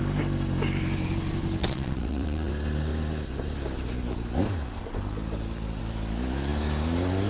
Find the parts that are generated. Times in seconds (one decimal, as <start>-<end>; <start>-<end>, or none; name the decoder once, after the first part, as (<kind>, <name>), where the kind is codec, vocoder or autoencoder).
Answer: 1.6-2.5 (vocoder, WaveNeXt)